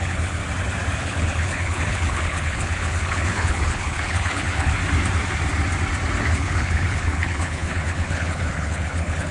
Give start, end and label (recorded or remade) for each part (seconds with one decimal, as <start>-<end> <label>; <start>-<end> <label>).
0.0-0.4 remade; 0.4-1.0 recorded; 1.0-4.8 remade; 4.8-6.3 recorded; 6.3-9.3 remade